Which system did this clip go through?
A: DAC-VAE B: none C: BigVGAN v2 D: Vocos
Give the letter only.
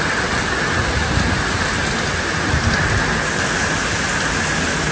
B